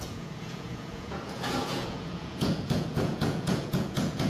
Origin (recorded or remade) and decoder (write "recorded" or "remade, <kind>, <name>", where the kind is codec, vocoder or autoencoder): remade, vocoder, Vocos